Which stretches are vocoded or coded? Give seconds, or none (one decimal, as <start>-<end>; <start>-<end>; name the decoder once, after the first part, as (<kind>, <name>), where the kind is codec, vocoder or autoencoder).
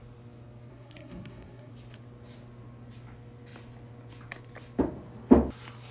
0.7-1.7 (codec, SNAC)